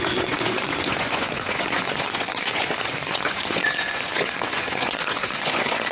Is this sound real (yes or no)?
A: no